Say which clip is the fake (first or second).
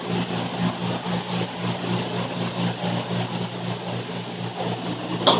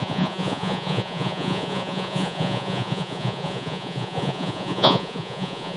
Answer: second